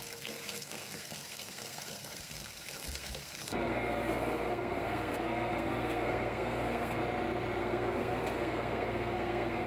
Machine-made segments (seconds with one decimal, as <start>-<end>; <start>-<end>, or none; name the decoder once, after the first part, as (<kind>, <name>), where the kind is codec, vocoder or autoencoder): 0.0-7.0 (codec, SNAC); 7.6-9.7